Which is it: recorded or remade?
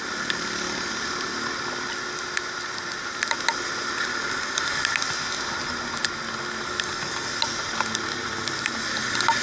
recorded